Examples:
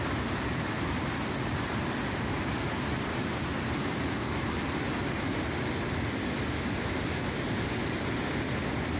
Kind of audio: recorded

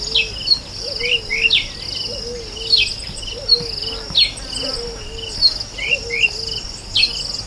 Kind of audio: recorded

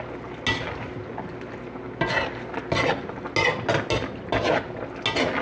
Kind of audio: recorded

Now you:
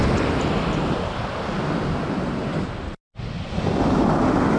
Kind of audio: recorded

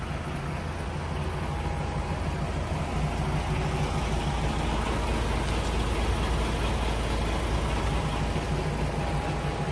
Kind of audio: recorded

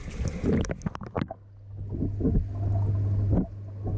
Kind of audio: recorded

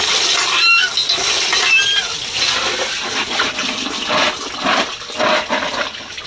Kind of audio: recorded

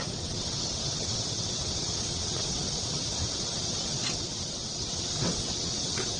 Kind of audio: remade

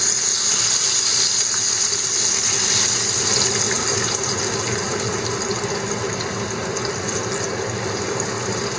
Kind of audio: recorded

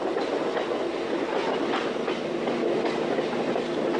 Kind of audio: recorded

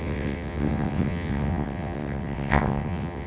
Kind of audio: remade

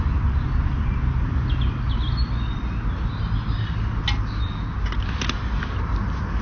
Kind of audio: recorded